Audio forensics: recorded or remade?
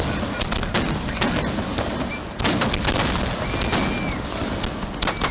recorded